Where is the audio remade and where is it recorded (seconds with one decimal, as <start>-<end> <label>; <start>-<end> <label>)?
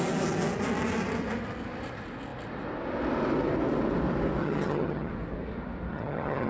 0.0-4.4 recorded; 4.4-5.1 remade; 5.1-5.9 recorded; 5.9-6.5 remade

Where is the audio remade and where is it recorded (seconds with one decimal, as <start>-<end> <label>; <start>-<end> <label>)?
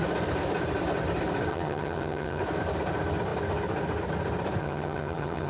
0.0-1.5 recorded; 1.5-2.4 remade; 2.4-4.6 recorded; 4.6-5.5 remade